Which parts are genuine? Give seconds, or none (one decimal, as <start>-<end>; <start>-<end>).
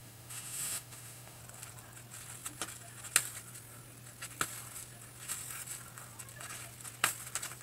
1.4-7.6